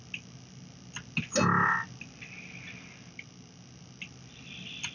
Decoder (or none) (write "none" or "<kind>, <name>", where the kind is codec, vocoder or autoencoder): none